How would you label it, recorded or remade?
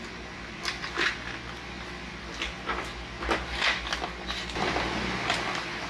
recorded